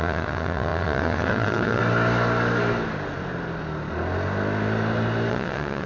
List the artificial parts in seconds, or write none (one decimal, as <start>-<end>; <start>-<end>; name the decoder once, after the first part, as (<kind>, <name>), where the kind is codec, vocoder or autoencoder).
0.0-1.8 (vocoder, WaveNeXt); 5.3-5.9